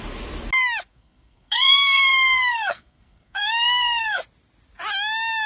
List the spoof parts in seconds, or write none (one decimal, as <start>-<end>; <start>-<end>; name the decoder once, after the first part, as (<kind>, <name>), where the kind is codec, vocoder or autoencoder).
0.9-4.2 (codec, SNAC)